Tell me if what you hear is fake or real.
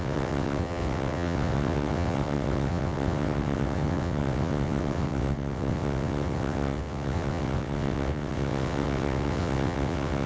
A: fake